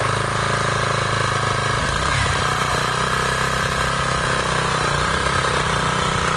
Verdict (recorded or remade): remade